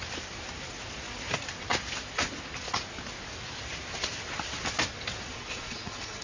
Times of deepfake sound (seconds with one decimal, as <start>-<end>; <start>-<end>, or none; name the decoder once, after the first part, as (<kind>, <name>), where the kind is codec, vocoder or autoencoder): 5.3-6.2 (vocoder, Vocos)